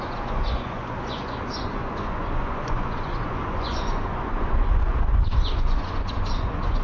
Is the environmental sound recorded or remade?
remade